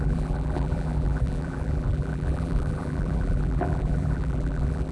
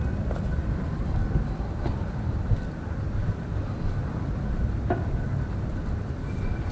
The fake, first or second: first